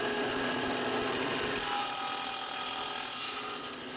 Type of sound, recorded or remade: recorded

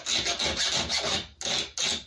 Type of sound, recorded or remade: recorded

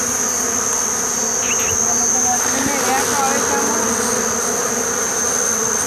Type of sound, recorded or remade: recorded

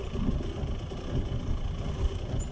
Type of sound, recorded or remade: recorded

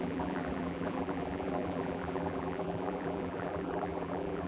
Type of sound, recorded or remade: remade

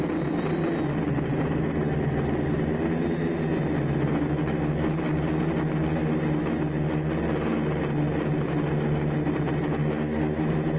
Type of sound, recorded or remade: recorded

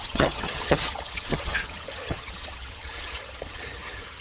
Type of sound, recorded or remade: remade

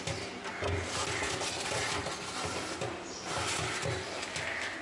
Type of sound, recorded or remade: recorded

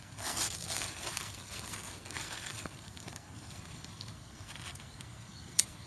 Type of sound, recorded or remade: remade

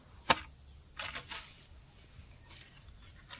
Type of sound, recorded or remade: recorded